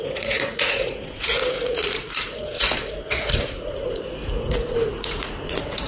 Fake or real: fake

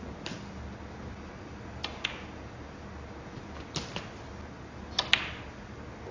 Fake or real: real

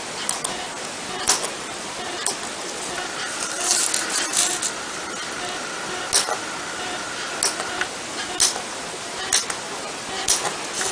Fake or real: real